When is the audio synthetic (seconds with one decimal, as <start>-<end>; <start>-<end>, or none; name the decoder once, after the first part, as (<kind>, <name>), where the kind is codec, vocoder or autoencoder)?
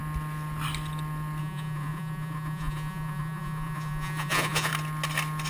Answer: 1.4-4.7 (vocoder, Vocos)